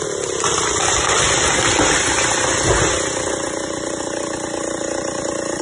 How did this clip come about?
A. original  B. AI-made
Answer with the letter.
A